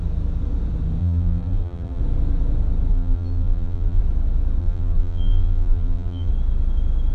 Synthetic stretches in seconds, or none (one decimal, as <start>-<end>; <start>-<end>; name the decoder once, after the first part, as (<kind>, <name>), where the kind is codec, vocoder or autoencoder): 1.0-2.0 (vocoder, BigVGAN v2); 2.9-4.0; 4.6-6.3

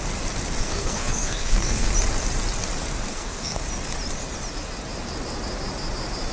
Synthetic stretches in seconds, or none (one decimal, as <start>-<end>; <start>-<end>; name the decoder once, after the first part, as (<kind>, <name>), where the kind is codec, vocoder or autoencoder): 0.6-1.9 (codec, SNAC); 3.1-3.6

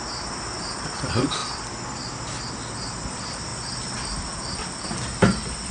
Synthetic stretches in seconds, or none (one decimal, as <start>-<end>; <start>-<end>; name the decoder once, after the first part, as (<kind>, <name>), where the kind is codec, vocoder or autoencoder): none

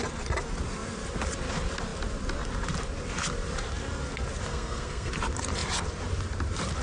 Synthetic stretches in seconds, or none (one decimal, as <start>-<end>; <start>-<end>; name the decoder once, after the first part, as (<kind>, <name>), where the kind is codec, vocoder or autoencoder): 4.5-5.1 (codec, SNAC)

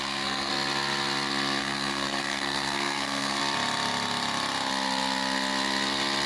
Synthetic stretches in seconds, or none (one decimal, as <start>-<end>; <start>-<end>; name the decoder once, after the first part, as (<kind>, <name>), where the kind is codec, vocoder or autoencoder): 0.0-0.5 (codec, SNAC); 1.6-3.4

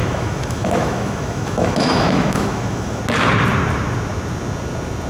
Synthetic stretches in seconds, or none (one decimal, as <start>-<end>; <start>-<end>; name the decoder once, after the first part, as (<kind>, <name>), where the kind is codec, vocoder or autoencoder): 0.0-3.0 (autoencoder, DAC-VAE)

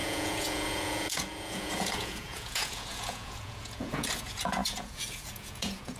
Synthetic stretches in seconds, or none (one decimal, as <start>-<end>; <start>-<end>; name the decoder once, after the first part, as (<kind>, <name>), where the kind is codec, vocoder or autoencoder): 0.0-6.0 (vocoder, Vocos)